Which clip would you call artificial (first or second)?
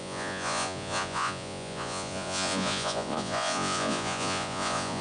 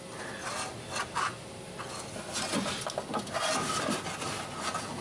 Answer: first